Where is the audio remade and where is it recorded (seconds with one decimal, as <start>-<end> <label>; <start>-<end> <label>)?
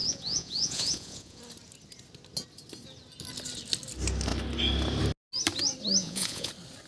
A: 0.0-1.4 remade; 1.4-6.0 recorded; 6.0-6.5 remade; 6.5-6.9 recorded